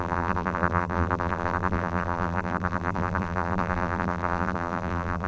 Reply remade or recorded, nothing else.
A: remade